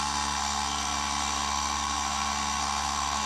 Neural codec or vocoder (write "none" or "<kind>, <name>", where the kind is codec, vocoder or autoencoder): codec, SNAC